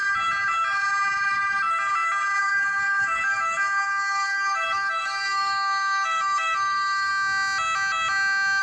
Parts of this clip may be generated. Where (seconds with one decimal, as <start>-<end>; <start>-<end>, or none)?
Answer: 2.4-7.1